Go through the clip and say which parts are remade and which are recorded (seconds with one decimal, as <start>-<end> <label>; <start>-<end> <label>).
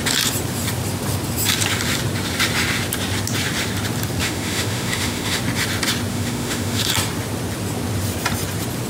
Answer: 0.0-4.2 recorded; 4.2-5.4 remade; 5.4-6.1 recorded; 6.1-6.8 remade; 6.8-8.9 recorded